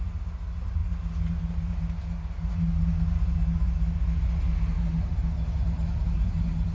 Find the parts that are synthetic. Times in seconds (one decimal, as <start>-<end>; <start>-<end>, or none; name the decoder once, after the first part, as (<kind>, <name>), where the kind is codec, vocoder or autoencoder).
none